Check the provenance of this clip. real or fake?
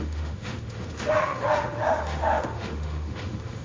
fake